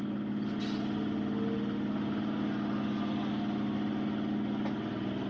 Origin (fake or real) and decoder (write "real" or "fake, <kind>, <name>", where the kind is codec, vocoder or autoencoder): real